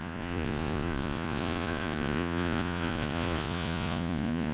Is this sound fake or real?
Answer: fake